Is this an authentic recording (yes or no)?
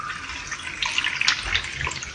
yes